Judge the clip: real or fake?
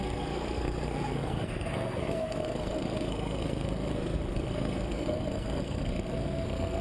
fake